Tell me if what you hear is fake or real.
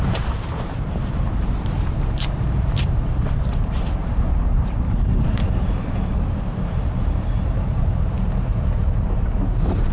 fake